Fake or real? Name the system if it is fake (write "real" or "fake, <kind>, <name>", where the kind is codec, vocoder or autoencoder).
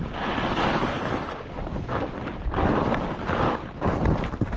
real